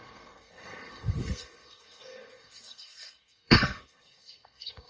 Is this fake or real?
fake